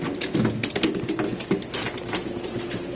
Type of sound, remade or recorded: recorded